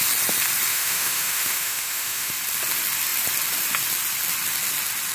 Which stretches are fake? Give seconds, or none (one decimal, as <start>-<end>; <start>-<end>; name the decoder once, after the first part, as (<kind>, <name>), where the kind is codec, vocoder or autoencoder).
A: 0.7-2.3 (autoencoder, DAC-VAE)